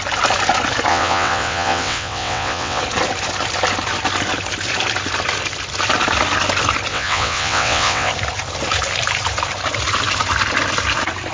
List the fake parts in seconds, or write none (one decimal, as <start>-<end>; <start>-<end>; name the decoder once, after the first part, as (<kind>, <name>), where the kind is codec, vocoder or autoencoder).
0.9-2.8 (vocoder, WaveNeXt); 6.9-8.1